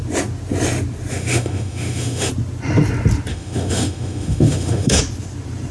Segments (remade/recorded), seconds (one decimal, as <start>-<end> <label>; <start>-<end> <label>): 0.0-1.1 recorded; 1.1-2.3 remade; 2.3-3.3 recorded; 3.3-5.0 remade; 5.0-5.7 recorded